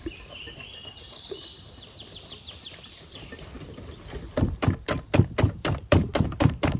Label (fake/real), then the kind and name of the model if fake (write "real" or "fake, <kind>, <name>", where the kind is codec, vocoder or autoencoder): fake, vocoder, BigVGAN v2